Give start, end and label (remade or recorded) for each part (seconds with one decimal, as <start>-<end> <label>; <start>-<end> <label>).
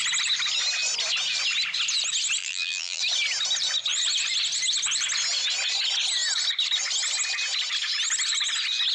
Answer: 0.0-2.4 recorded; 2.4-3.0 remade; 3.0-8.9 recorded